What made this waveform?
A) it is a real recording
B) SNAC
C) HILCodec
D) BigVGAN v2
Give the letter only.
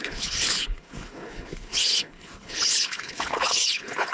C